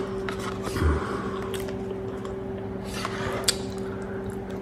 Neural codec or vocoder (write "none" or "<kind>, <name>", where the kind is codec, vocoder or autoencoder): none